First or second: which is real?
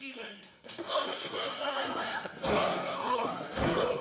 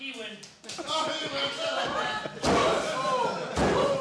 second